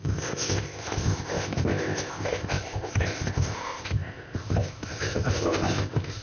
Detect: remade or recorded remade